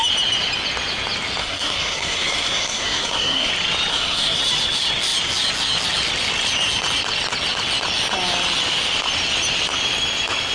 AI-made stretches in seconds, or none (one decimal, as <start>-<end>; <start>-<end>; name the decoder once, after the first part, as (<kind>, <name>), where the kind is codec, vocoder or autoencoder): 1.4-3.5 (codec, SNAC); 3.9-4.4

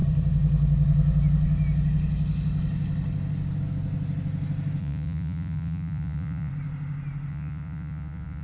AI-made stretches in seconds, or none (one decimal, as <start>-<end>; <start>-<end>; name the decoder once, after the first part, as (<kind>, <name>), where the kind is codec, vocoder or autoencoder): 4.8-6.5 (vocoder, Vocos); 7.3-8.4